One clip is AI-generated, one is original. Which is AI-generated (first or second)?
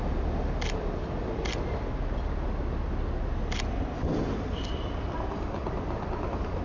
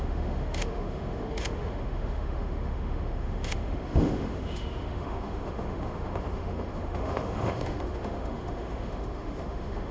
second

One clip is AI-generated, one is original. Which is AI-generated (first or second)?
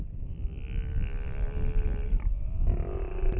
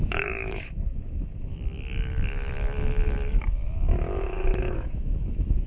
second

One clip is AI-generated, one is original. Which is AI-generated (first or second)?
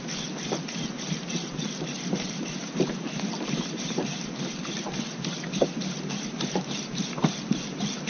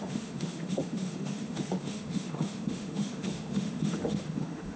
second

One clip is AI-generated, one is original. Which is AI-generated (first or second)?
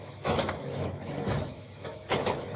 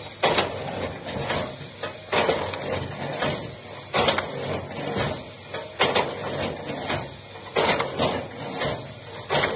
first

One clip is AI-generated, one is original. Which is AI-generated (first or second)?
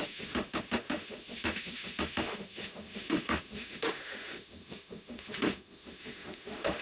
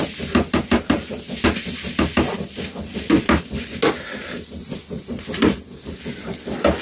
first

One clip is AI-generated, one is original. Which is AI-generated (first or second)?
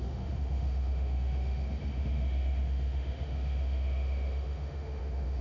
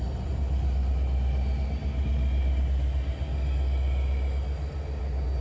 first